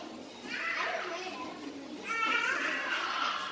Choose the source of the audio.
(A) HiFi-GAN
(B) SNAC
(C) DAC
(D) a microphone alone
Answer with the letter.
D